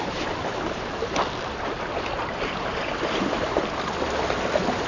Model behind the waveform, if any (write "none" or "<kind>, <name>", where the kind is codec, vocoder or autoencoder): none